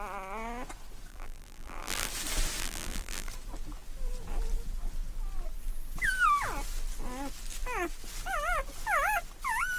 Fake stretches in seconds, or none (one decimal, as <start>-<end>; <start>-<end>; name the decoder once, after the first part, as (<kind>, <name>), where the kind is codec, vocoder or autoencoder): 1.1-2.1 (vocoder, BigVGAN v2); 2.6-3.3